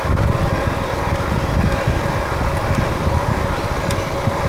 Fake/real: real